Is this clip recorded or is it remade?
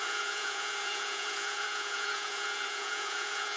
remade